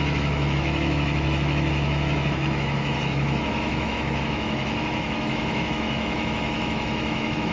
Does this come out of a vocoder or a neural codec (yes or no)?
yes